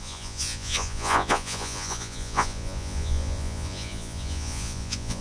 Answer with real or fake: fake